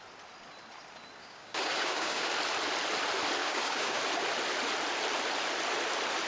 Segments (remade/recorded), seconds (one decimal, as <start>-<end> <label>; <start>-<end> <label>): 0.0-1.2 recorded; 1.2-2.3 remade; 2.3-3.4 recorded; 3.4-4.0 remade; 4.0-6.3 recorded